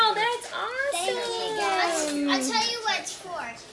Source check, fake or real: real